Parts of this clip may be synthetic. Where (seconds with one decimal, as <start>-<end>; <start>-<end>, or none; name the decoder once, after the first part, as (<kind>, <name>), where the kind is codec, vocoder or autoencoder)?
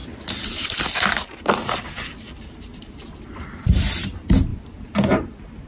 none